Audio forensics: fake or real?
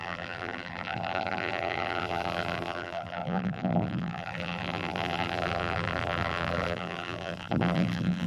fake